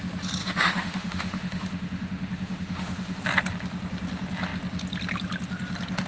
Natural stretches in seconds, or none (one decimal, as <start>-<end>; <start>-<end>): 0.0-0.4; 3.2-6.1